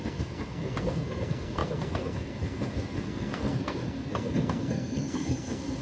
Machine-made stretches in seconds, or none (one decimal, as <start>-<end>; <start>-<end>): 0.0-5.8